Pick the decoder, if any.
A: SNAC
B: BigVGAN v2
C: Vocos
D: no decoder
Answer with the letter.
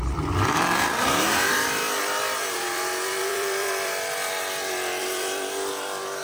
B